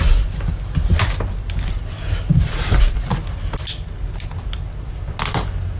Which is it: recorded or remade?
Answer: recorded